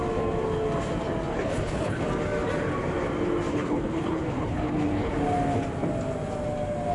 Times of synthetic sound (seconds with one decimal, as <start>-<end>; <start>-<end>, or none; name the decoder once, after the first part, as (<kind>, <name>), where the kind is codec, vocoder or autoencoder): 1.3-2.1 (codec, HILCodec); 3.5-5.1